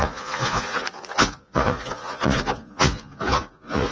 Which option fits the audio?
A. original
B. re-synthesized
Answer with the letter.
B